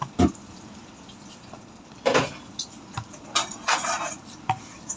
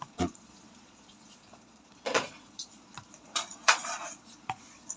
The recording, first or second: first